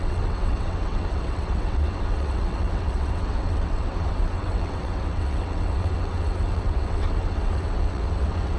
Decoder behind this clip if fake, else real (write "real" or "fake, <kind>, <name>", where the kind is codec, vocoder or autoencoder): fake, vocoder, WaveNeXt